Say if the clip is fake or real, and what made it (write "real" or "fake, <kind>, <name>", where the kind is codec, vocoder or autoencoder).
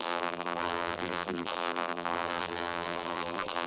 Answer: fake, vocoder, BigVGAN v2